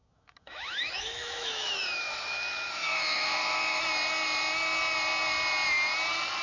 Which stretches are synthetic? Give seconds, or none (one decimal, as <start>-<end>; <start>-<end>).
0.0-3.8